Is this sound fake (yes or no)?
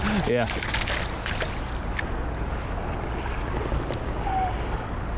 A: no